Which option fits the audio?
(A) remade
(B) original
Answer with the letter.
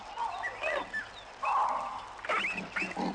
B